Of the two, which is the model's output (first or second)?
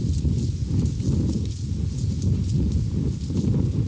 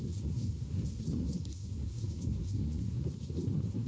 second